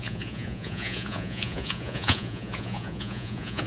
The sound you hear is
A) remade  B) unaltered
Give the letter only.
A